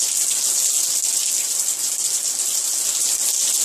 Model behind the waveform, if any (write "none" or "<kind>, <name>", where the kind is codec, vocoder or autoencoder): none